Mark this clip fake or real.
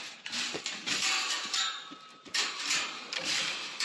fake